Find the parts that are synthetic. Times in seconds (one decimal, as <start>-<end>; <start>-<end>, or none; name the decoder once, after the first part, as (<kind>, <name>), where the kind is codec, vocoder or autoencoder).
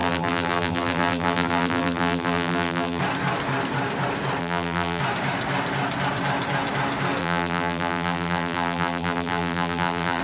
0.0-3.0 (vocoder, BigVGAN v2); 4.4-5.0; 7.2-10.2